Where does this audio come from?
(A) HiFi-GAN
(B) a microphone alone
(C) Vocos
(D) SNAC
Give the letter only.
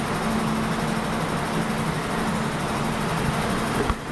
B